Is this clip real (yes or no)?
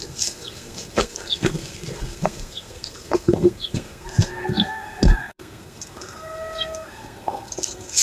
no